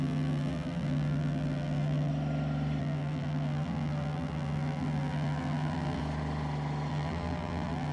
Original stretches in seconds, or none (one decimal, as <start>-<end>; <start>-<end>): 2.1-2.8; 6.0-6.9